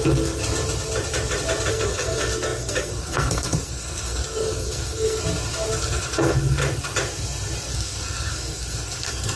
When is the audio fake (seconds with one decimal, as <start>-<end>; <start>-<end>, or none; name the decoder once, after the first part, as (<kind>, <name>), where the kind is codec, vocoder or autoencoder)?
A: 0.0-0.4 (codec, SNAC); 1.7-5.2; 5.7-6.6; 7.7-9.4